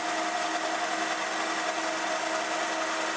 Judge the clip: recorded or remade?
recorded